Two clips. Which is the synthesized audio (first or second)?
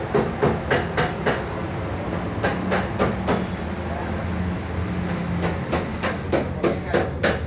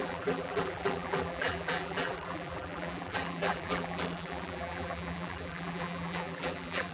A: second